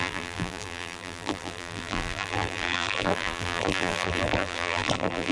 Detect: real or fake fake